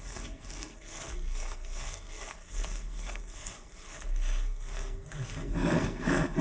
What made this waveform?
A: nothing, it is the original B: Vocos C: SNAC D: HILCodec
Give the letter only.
C